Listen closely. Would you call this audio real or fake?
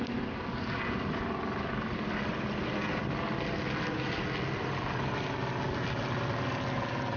real